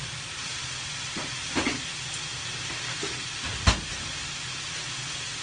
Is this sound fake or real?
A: real